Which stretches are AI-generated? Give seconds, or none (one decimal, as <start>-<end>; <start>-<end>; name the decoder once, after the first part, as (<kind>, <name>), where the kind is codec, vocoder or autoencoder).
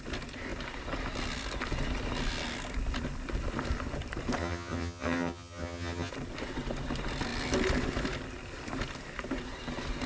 4.4-6.1 (vocoder, HiFi-GAN)